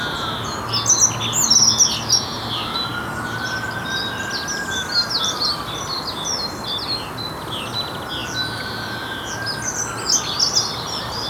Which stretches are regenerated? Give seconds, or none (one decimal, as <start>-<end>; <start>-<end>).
none